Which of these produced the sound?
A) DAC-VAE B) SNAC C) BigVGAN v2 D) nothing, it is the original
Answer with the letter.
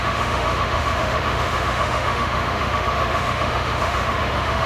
A